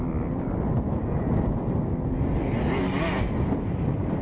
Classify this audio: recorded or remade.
recorded